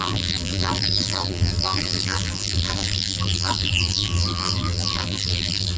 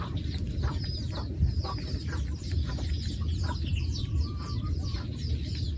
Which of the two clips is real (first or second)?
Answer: second